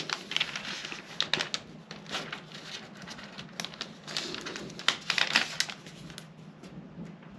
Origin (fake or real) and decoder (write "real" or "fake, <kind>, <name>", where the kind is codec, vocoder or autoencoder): real